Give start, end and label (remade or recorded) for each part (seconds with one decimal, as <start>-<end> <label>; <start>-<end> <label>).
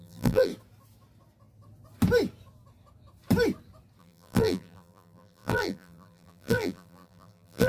0.0-0.5 remade; 0.5-4.0 recorded; 4.0-7.7 remade